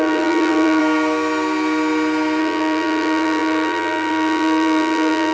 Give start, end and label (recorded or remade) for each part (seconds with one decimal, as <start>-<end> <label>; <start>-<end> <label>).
0.0-0.8 remade; 0.8-2.4 recorded; 2.4-5.3 remade